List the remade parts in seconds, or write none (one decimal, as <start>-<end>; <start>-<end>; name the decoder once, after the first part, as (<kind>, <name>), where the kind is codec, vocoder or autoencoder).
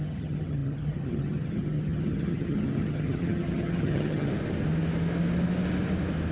0.0-4.3 (vocoder, HiFi-GAN)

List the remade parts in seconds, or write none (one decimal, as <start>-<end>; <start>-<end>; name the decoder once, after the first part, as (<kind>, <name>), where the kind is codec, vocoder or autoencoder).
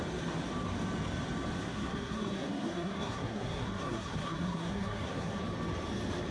1.6-5.4 (codec, SNAC)